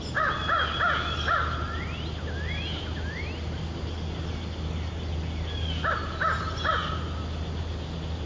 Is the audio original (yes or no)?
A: yes